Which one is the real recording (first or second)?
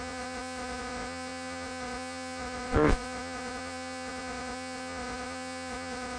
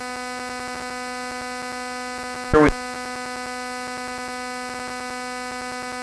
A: second